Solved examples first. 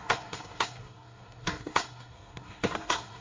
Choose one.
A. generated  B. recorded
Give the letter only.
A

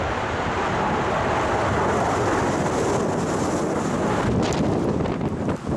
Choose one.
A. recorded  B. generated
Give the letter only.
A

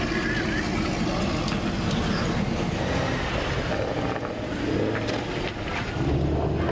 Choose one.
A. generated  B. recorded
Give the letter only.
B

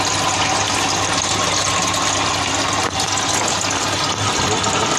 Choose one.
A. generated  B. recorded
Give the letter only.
B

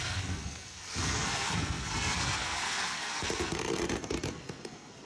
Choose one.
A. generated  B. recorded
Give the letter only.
A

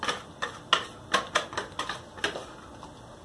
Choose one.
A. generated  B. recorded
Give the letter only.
B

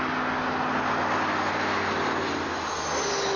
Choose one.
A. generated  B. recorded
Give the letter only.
B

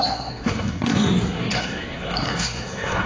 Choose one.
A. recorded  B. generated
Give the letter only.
B